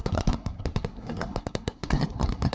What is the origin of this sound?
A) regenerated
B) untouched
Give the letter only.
A